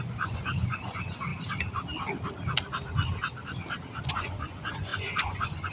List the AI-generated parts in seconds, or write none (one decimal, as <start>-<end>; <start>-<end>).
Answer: 0.0-1.3; 4.1-5.7